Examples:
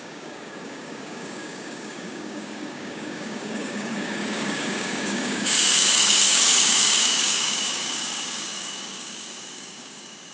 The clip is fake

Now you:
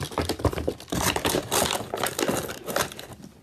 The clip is real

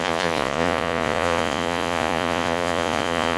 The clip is fake